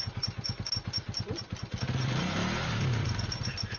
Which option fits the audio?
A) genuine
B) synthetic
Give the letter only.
A